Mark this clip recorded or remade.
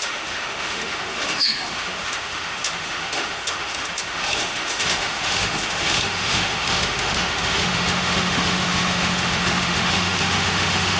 remade